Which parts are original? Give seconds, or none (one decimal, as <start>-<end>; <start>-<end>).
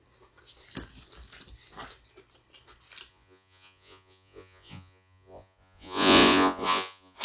0.0-3.1